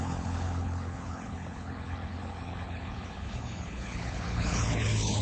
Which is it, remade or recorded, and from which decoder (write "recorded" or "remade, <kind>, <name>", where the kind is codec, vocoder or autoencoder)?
remade, codec, HILCodec